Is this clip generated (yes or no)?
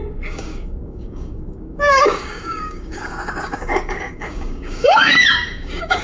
yes